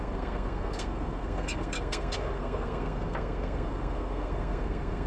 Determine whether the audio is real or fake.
fake